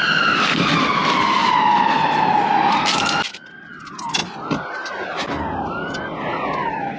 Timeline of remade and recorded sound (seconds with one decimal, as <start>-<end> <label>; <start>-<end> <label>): 0.0-7.0 recorded